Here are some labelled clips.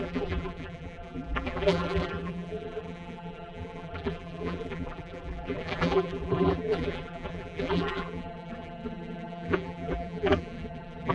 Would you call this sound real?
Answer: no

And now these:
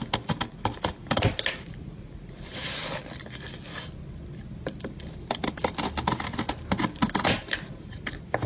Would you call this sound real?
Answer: yes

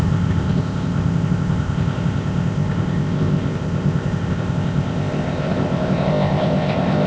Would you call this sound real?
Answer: no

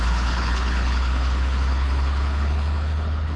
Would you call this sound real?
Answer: no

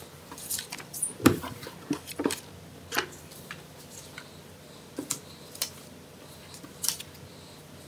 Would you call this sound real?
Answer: yes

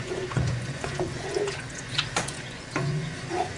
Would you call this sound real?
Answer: no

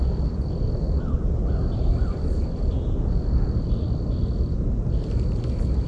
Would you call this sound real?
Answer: yes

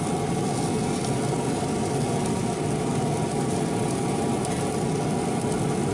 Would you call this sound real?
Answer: yes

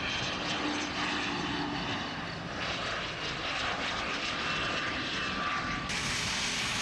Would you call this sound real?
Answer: yes